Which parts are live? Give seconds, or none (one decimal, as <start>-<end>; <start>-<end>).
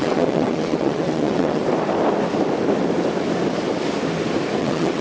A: 1.6-4.6